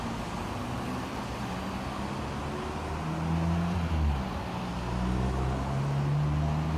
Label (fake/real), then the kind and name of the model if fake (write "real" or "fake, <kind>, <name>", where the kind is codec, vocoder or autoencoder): real